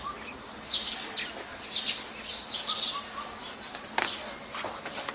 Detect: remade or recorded recorded